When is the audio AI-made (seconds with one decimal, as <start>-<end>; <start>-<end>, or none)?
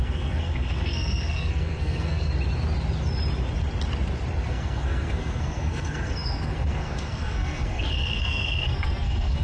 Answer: 0.0-2.3; 4.5-9.4